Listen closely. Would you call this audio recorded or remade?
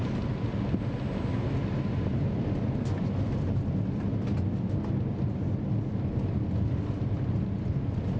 recorded